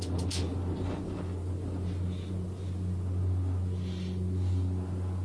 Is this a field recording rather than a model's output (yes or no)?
yes